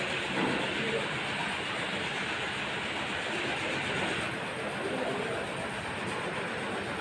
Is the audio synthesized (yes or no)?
no